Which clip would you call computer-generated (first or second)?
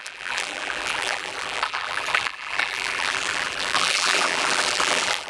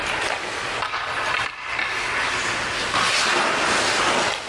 first